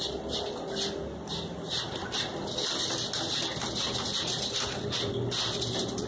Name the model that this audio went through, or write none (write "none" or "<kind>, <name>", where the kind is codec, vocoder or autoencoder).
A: none